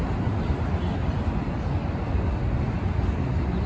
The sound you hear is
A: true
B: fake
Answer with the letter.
A